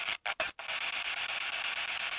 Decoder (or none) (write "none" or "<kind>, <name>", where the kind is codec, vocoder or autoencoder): none